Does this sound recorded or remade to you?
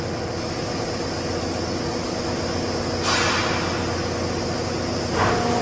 recorded